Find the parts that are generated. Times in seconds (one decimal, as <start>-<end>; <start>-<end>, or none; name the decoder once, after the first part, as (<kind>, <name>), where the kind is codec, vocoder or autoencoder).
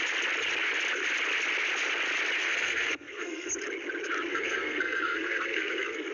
2.4-3.5 (codec, SNAC); 4.3-6.1